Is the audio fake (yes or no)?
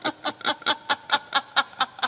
no